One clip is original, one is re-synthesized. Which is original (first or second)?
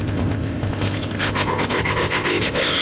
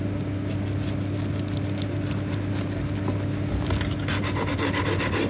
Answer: second